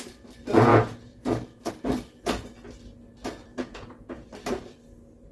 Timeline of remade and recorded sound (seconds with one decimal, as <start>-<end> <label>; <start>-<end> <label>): 0.0-0.7 recorded; 0.7-1.7 remade; 1.7-3.5 recorded; 3.5-4.3 remade; 4.3-5.3 recorded